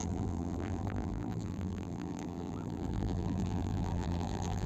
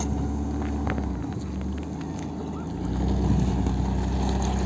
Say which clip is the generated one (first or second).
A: first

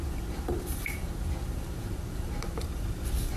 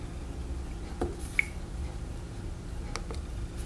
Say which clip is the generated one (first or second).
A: first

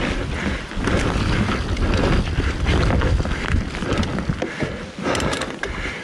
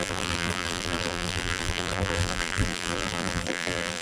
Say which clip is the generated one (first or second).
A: second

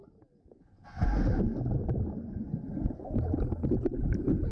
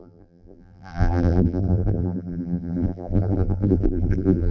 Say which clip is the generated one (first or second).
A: second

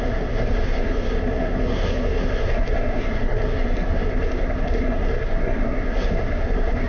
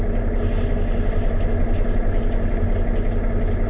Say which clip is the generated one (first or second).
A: first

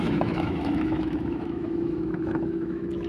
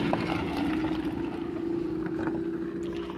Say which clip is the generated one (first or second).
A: first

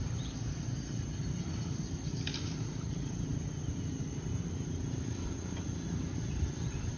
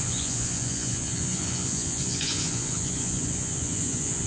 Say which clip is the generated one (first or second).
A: second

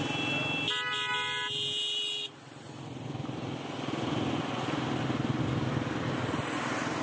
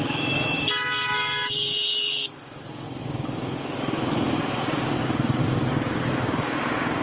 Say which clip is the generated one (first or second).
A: second